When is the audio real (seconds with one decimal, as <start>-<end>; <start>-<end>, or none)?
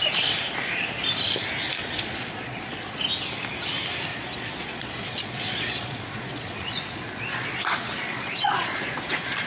0.0-1.8; 3.0-4.1